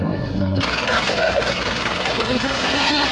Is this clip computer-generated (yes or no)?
yes